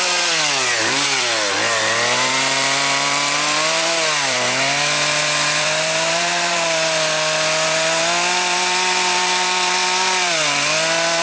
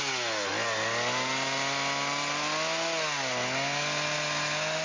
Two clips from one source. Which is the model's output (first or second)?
first